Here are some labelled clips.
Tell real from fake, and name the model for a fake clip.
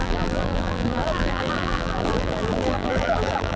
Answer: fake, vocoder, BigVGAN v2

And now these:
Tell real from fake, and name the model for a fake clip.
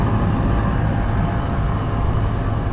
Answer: real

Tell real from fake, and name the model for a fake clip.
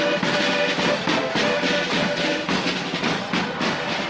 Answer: real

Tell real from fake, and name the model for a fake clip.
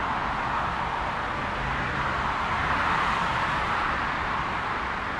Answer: real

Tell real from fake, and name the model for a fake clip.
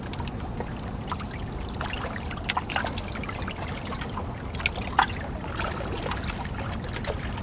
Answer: real